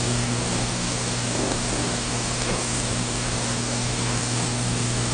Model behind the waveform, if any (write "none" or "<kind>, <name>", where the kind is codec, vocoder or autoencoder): codec, DAC